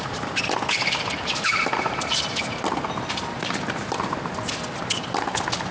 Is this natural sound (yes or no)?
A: yes